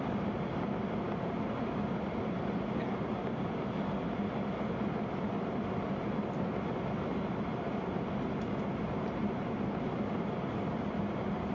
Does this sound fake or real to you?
real